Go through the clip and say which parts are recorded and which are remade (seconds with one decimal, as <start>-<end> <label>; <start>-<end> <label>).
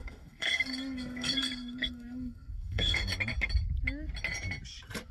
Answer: 0.0-3.1 remade; 3.1-5.1 recorded